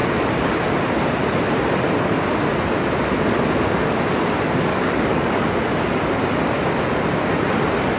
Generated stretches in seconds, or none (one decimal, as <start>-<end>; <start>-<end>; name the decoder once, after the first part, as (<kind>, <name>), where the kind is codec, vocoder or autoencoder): 4.7-5.8 (codec, DAC)